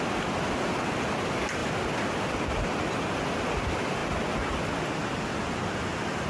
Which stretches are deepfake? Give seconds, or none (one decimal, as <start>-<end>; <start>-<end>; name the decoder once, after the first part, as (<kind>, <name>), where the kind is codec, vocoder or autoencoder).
none

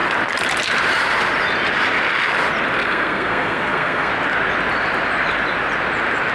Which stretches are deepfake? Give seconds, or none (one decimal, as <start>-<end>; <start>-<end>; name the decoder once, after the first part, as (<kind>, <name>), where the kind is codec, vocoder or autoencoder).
2.8-4.1 (codec, SNAC)

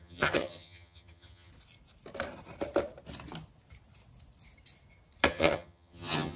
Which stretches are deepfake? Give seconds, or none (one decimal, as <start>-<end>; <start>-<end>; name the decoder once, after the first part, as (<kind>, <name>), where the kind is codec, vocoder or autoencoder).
0.0-1.5 (vocoder, HiFi-GAN); 5.3-6.4

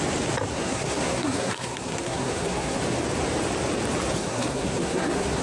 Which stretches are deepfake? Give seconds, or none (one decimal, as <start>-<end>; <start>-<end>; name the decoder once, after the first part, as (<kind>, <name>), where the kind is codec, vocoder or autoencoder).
0.5-2.8 (codec, SNAC); 4.1-5.4

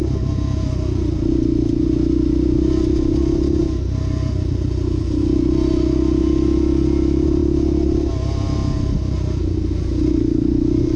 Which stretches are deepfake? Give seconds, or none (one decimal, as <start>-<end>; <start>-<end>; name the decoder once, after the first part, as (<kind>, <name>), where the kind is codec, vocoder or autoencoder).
none

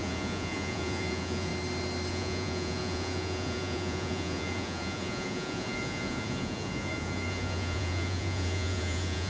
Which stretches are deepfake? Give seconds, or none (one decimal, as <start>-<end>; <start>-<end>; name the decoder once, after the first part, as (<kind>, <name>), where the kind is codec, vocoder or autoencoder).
0.0-1.5 (vocoder, Vocos); 2.1-9.3

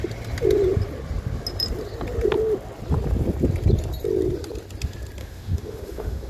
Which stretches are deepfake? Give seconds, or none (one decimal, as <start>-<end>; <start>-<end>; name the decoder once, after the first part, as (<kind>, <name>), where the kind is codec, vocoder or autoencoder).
5.2-6.3 (autoencoder, DAC-VAE)

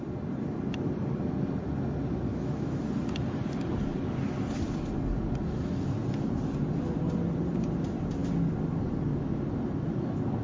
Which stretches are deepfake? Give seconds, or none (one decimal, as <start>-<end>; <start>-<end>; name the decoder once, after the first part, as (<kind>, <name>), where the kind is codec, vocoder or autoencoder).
2.3-2.8 (autoencoder, DAC-VAE)